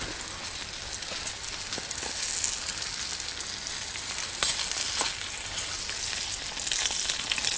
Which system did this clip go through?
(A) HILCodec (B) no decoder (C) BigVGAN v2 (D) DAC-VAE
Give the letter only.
B